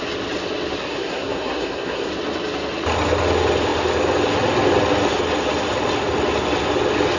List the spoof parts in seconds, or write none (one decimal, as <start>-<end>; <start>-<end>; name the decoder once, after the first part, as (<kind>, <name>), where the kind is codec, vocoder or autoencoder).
0.8-2.1 (codec, SNAC)